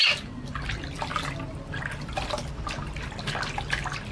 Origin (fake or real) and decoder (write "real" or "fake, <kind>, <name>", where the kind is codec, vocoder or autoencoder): real